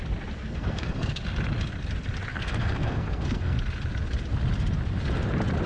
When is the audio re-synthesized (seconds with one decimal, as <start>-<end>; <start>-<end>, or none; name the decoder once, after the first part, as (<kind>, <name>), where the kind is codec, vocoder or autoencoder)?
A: 0.4-1.2 (codec, SNAC); 2.3-3.6